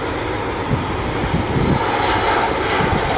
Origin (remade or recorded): recorded